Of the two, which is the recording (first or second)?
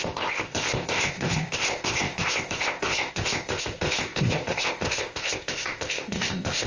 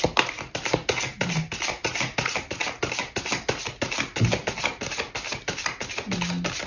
second